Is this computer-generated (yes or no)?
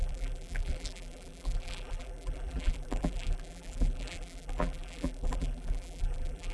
yes